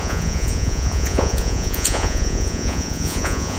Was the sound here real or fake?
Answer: fake